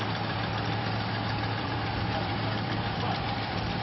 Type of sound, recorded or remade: remade